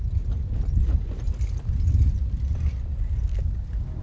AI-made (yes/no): no